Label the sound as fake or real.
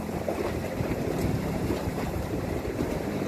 fake